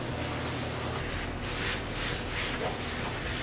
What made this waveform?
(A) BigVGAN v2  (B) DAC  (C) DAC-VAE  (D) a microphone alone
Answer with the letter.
D